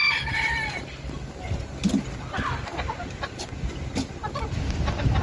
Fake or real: real